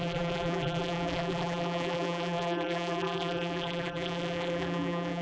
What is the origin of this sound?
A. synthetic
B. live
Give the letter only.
A